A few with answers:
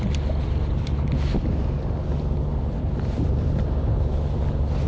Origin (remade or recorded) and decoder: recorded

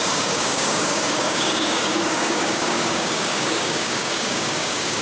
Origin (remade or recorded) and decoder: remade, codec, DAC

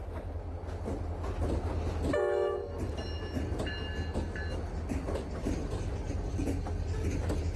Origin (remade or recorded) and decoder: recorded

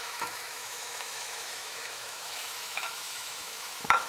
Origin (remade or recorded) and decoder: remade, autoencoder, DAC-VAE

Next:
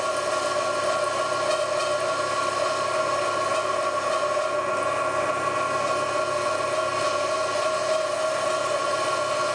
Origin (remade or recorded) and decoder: recorded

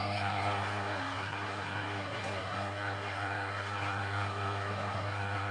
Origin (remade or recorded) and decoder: remade, codec, SNAC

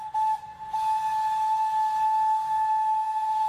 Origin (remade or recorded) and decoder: recorded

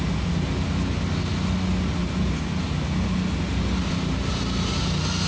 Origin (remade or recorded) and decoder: recorded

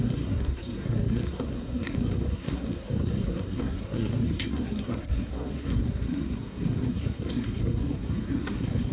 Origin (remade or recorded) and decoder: remade, codec, SNAC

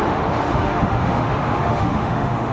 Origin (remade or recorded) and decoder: remade, autoencoder, DAC-VAE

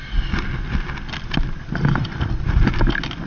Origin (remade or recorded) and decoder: recorded